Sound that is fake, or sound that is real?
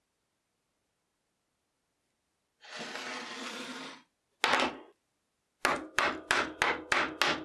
real